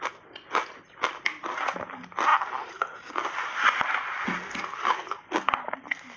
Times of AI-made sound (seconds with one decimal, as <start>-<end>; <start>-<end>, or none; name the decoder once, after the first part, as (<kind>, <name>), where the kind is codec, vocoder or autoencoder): none